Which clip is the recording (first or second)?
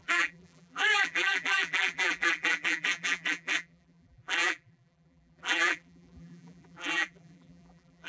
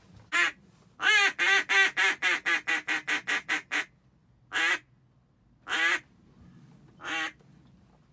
second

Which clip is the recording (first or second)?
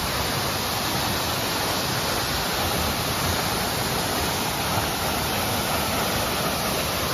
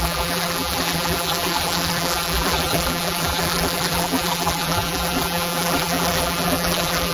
first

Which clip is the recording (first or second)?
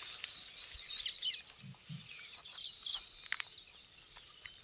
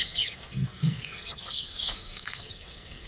first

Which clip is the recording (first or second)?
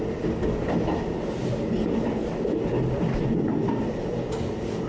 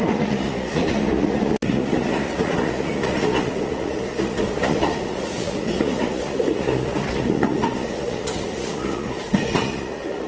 first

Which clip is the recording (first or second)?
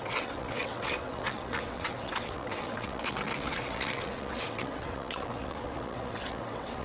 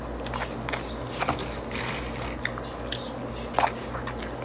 second